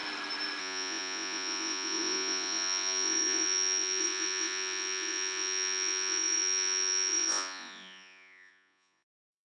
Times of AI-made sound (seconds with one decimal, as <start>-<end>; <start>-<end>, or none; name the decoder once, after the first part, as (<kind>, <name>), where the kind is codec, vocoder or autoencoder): 0.6-9.4 (vocoder, Vocos)